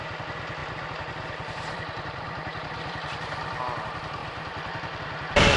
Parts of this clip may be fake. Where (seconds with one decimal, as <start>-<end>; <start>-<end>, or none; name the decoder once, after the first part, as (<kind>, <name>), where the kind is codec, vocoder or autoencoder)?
0.6-3.6 (vocoder, BigVGAN v2); 4.2-5.0